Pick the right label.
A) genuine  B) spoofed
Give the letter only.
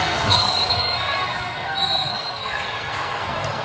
B